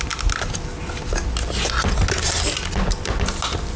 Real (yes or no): yes